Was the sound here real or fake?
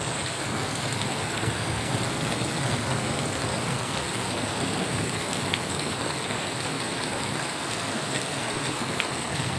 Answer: fake